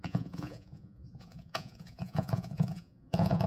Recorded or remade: remade